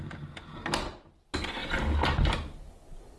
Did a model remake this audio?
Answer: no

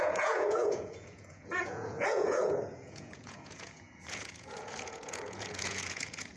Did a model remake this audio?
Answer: yes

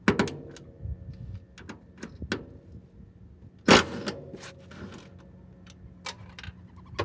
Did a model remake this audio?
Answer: no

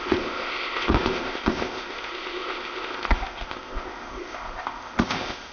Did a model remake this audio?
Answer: yes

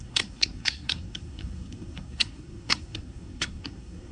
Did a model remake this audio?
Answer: yes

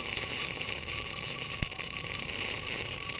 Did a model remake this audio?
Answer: yes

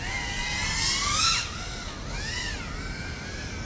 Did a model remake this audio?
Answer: no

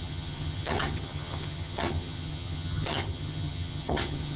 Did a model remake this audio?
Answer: yes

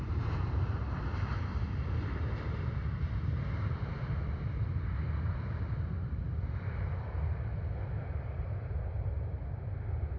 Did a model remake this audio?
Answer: yes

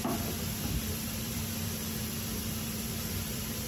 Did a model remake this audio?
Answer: yes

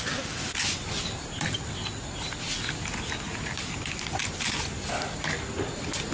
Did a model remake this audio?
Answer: no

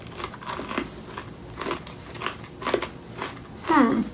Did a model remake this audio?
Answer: no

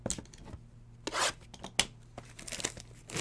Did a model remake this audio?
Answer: no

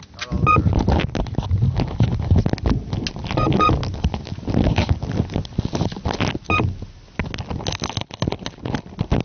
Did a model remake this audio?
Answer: no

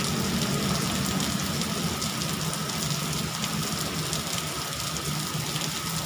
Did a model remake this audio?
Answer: no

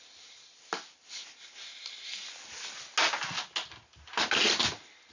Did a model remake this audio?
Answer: no